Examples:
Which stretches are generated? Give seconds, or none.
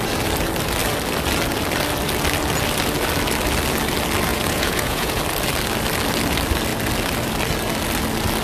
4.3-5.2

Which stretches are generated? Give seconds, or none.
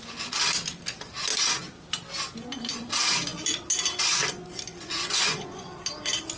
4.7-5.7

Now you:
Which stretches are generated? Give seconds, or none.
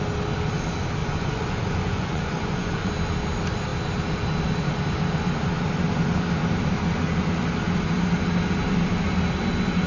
1.0-2.9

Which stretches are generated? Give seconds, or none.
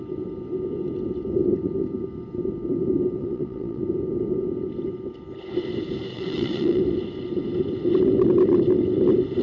3.2-3.8; 6.1-6.8